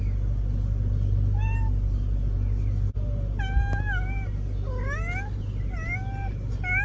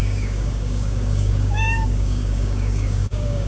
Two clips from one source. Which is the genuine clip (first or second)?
first